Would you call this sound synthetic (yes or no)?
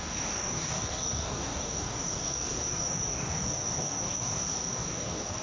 yes